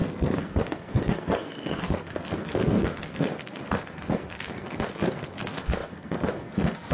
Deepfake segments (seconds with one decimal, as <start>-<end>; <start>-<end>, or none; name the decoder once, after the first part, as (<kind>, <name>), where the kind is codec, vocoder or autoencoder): 0.0-6.9 (codec, SNAC)